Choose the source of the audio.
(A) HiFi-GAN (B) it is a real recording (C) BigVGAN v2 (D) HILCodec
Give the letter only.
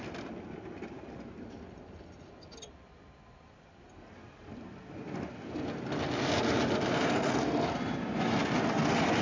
B